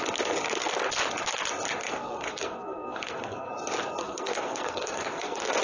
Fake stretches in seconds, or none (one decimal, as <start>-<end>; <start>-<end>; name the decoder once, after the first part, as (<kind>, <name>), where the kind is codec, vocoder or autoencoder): 1.8-3.5 (codec, SNAC); 4.0-5.6